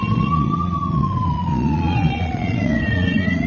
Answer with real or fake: fake